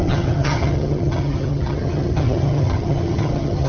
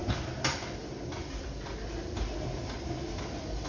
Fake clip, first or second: first